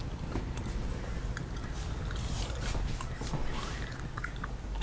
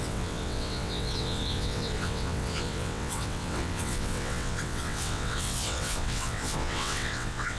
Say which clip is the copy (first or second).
second